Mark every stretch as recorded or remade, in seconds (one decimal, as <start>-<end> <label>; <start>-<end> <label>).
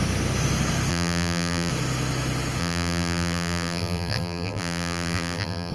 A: 0.0-0.9 recorded; 0.9-1.7 remade; 1.7-2.6 recorded; 2.6-5.7 remade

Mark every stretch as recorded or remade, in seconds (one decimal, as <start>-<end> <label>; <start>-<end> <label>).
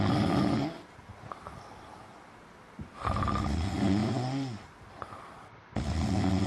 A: 0.0-1.1 recorded; 1.1-2.1 remade; 2.1-4.0 recorded; 4.0-5.9 remade; 5.9-6.5 recorded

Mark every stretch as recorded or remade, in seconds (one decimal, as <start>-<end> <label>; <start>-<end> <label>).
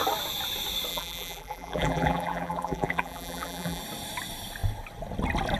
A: 0.0-0.9 recorded; 0.9-3.8 remade; 3.8-5.6 recorded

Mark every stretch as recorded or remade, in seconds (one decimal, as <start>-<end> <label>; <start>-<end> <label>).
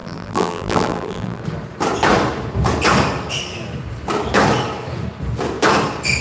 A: 0.0-1.4 remade; 1.4-6.2 recorded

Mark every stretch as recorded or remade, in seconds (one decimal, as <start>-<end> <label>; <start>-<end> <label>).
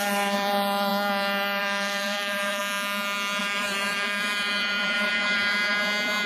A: 0.0-0.9 remade; 0.9-1.6 recorded; 1.6-2.6 remade; 2.6-3.4 recorded; 3.4-5.7 remade; 5.7-6.3 recorded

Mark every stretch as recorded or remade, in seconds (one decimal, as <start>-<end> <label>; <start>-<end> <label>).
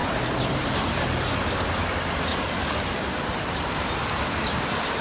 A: 0.0-0.7 remade; 0.7-2.3 recorded; 2.3-3.9 remade; 3.9-5.0 recorded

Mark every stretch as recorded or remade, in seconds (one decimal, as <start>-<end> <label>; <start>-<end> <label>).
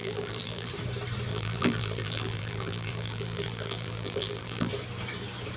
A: 0.0-0.7 remade; 0.7-1.3 recorded; 1.3-4.7 remade; 4.7-5.6 recorded